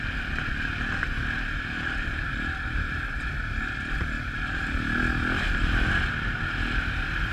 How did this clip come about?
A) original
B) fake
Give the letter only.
A